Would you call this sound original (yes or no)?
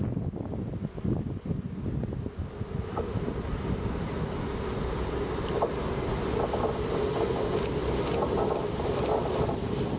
yes